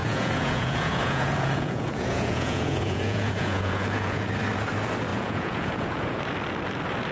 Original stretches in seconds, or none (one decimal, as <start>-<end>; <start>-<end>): 4.3-5.1; 6.2-7.1